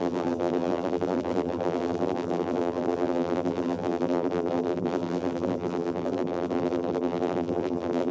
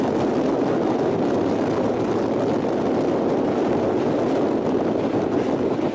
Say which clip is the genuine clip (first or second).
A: second